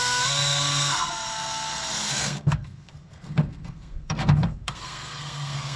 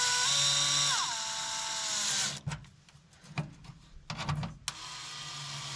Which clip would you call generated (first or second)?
first